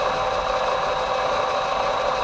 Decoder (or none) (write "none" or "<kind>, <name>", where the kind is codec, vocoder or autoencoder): none